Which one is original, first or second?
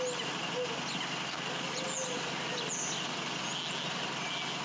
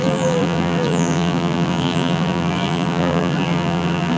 first